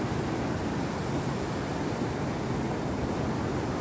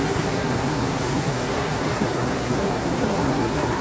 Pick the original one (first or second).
first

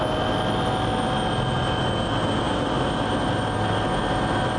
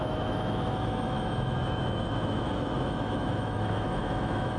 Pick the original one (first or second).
first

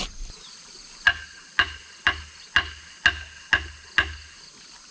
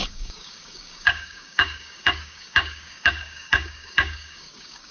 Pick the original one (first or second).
first